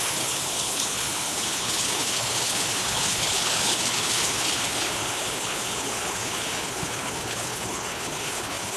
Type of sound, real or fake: fake